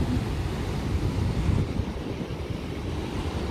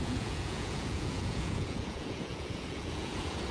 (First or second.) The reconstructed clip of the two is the second